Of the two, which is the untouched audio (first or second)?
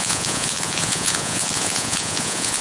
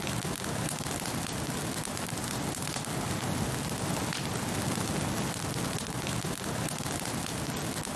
second